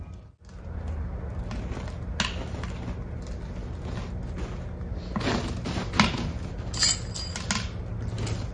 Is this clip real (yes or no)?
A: yes